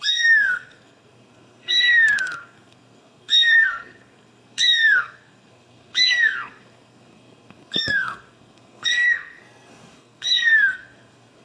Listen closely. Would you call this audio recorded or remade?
remade